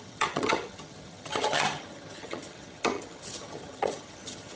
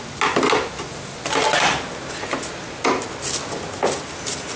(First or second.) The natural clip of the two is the second